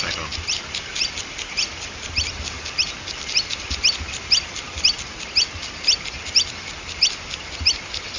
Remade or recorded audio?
recorded